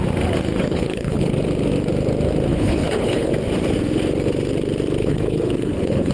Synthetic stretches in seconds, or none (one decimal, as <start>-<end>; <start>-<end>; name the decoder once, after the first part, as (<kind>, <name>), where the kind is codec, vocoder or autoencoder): 0.6-1.3 (codec, HILCodec); 2.5-3.3; 5.0-6.1